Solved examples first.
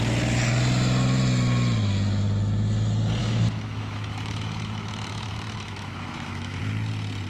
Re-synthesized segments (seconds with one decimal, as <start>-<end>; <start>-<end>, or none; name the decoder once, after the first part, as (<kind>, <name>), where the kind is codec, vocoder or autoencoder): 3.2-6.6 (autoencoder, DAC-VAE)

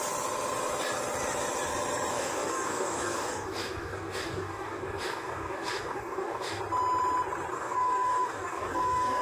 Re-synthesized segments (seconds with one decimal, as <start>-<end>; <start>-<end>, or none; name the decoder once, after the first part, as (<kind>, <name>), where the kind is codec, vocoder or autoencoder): 2.1-6.6 (codec, DAC); 7.5-9.2

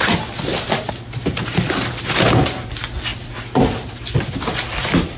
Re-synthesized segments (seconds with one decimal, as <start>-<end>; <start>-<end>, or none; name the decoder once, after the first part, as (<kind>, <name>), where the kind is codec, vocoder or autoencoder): none

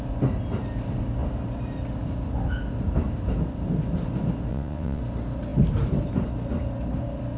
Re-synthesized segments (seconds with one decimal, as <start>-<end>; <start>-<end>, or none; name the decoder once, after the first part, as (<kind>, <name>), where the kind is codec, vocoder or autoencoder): 4.5-5.0 (vocoder, WaveNeXt)

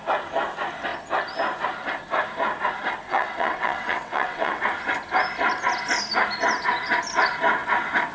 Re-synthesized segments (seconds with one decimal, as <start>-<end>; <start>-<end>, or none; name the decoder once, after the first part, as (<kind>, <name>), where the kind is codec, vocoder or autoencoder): 3.1-4.6 (vocoder, WaveNeXt)

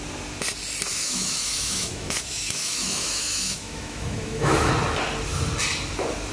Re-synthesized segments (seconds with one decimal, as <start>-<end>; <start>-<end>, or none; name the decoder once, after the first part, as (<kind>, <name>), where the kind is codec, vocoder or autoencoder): 0.9-4.7 (autoencoder, DAC-VAE)